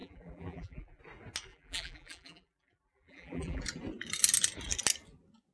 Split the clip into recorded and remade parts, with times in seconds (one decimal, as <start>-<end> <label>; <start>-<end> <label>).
0.0-1.0 remade; 1.0-1.5 recorded; 1.5-3.6 remade; 3.6-5.5 recorded